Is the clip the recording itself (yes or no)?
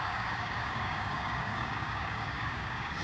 no